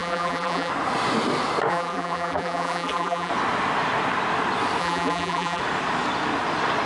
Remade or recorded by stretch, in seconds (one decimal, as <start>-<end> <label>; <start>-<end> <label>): 0.0-0.7 remade; 0.7-1.7 recorded; 1.7-3.3 remade; 3.3-4.8 recorded; 4.8-5.6 remade; 5.6-6.9 recorded